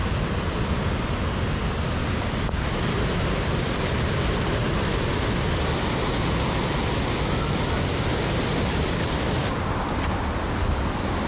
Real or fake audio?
real